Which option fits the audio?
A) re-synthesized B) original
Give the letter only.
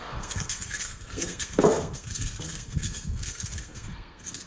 A